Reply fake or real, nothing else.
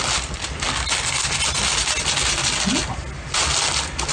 real